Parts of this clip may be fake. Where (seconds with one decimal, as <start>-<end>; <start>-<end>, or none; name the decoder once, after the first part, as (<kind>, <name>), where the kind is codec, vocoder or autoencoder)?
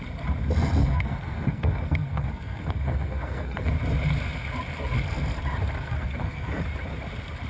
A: 0.8-3.7 (codec, SNAC); 5.8-6.6